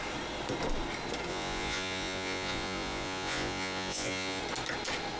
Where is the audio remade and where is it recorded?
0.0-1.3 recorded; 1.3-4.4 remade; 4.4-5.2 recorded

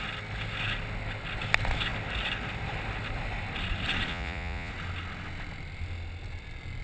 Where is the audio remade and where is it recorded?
0.0-4.1 recorded; 4.1-4.7 remade; 4.7-6.8 recorded

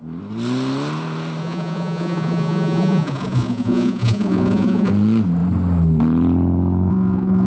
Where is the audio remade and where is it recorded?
0.0-1.4 recorded; 1.4-4.9 remade; 4.9-6.9 recorded; 6.9-7.5 remade